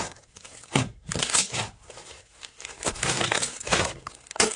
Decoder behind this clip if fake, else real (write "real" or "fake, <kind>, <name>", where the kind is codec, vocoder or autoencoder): fake, codec, SNAC